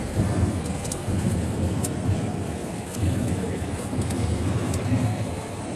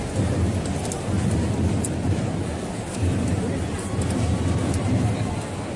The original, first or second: second